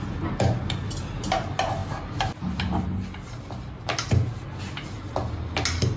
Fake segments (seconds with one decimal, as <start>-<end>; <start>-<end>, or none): none